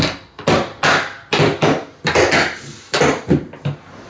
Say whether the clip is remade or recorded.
recorded